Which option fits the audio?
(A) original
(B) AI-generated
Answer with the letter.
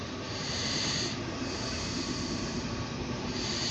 A